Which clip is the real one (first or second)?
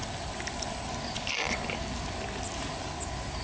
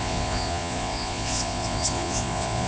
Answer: first